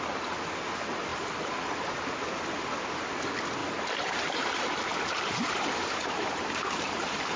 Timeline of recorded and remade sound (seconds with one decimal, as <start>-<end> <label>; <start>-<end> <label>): 0.0-3.6 recorded; 3.6-7.4 remade